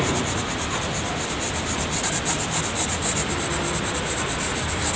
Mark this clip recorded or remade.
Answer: recorded